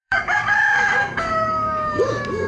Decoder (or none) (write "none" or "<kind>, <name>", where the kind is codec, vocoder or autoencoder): codec, DAC